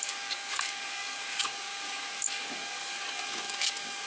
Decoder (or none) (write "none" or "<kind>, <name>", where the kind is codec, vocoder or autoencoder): codec, DAC